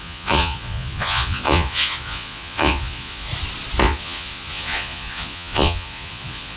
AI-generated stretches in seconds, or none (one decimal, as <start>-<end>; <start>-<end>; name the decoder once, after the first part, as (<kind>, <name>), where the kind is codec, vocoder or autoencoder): 0.0-3.3 (vocoder, Vocos); 3.8-6.6